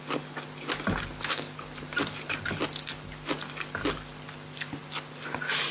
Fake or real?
real